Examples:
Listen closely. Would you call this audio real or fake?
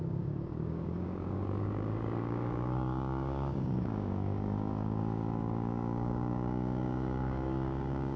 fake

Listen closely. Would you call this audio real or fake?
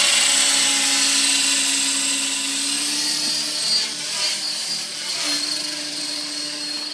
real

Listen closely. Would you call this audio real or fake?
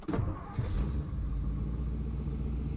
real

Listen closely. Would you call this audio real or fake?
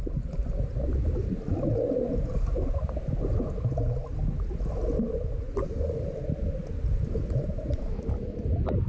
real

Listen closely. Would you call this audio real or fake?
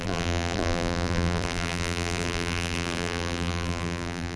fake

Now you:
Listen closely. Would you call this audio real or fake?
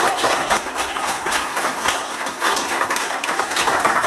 fake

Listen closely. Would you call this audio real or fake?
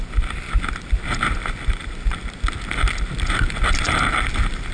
real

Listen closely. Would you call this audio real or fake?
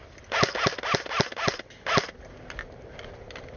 real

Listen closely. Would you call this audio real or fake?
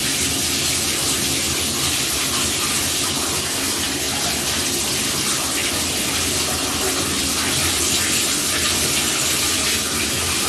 real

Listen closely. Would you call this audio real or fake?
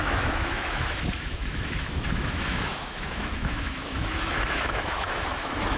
fake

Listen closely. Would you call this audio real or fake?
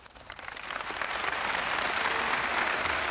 real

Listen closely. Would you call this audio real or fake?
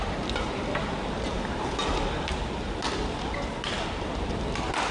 real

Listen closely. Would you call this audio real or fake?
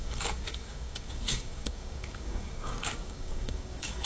fake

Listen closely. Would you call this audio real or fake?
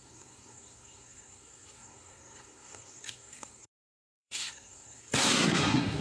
fake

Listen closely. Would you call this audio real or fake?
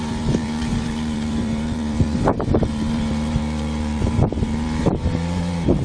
fake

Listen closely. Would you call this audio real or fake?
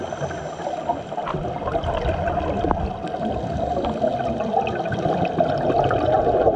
real